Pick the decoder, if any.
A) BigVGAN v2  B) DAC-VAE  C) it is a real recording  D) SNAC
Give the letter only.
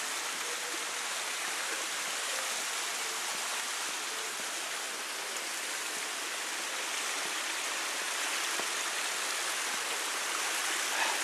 C